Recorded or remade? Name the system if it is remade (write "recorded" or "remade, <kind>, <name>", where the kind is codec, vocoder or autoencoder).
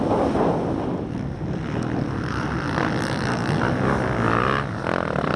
recorded